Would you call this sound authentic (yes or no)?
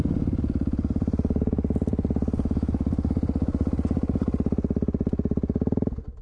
yes